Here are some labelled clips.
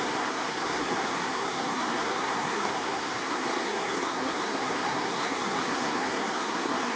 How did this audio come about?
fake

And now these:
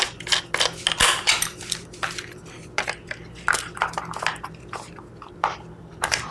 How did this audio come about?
real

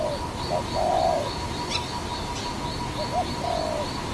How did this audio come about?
real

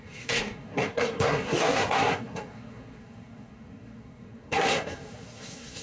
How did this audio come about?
fake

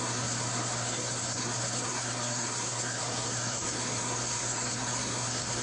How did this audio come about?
fake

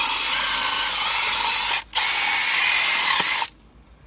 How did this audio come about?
real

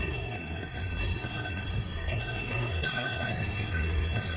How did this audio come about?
fake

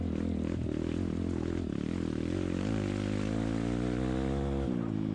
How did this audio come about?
real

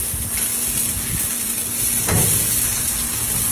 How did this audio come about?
real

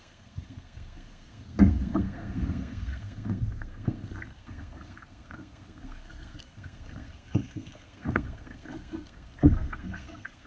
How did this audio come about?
fake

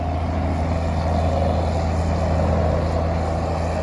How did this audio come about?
real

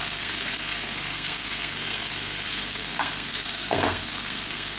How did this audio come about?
fake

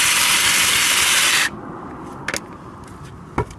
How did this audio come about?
real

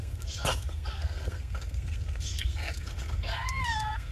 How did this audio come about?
fake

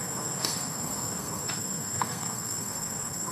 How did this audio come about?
fake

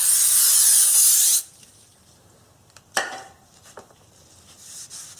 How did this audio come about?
real